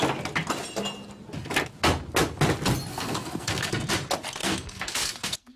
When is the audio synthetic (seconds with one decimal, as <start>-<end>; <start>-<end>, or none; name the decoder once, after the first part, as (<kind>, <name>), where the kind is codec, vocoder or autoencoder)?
2.9-3.9 (codec, SNAC); 4.4-5.6